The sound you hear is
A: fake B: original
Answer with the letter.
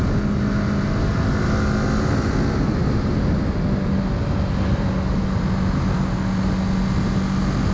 B